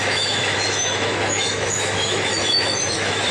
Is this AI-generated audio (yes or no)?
yes